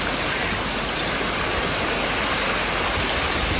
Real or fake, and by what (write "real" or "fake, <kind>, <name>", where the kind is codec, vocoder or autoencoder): real